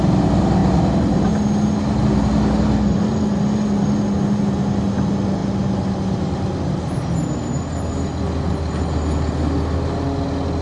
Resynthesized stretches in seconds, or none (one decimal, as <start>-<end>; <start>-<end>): none

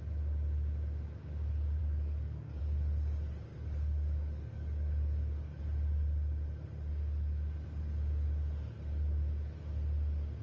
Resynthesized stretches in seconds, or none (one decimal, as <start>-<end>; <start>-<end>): 1.8-2.6; 3.5-5.6

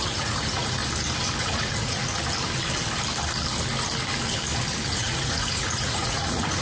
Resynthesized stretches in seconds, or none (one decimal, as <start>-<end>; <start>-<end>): 0.0-0.8; 1.4-2.0; 4.9-6.6